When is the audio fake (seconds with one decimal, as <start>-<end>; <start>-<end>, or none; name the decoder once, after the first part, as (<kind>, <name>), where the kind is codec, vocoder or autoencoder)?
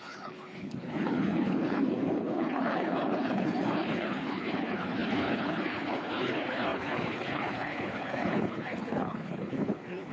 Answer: 0.0-10.1 (codec, HILCodec)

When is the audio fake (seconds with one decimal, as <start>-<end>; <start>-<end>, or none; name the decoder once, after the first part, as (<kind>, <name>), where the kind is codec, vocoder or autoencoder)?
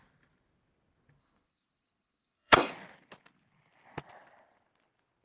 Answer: 1.2-2.7 (codec, HILCodec)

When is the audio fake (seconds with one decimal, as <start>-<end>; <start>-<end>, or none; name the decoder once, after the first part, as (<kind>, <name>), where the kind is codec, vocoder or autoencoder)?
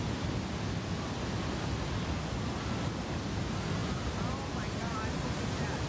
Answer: none